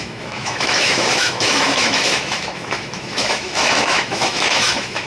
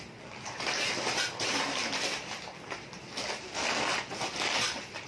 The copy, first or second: first